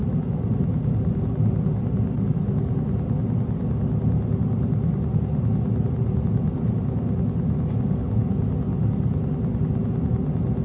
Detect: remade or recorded recorded